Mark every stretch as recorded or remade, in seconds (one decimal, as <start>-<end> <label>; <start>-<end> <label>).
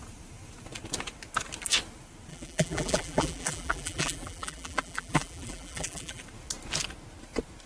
0.0-2.3 recorded; 2.3-6.2 remade; 6.2-7.7 recorded